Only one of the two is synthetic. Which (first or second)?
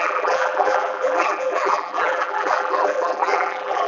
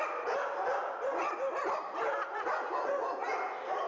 first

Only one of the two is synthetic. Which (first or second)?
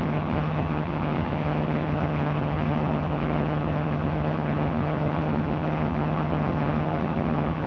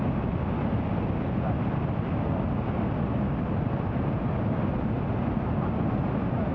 first